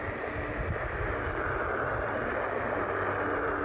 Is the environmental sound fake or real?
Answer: real